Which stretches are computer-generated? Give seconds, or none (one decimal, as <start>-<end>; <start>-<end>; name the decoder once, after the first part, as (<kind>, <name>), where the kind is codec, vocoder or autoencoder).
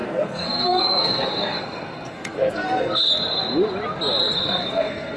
0.0-3.1 (codec, SNAC); 4.2-5.2